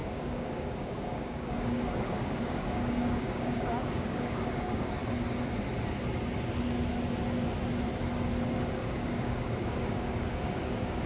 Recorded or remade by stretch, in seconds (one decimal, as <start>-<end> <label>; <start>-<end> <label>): 0.0-5.0 remade; 5.0-8.8 recorded; 8.8-11.1 remade